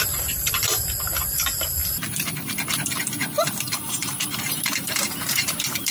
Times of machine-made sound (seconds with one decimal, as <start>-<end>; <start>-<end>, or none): 0.0-1.8; 3.6-5.9